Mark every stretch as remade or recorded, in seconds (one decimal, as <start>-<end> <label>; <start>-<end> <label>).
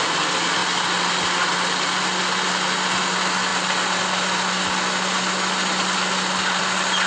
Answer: 0.0-7.1 recorded